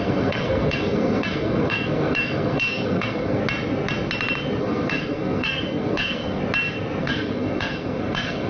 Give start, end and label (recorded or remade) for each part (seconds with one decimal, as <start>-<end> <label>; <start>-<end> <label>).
0.0-3.4 remade; 3.4-4.6 recorded; 4.6-6.4 remade; 6.4-7.0 recorded; 7.0-8.5 remade